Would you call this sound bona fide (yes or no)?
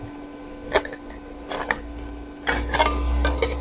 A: yes